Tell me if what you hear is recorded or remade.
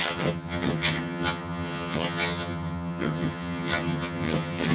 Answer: remade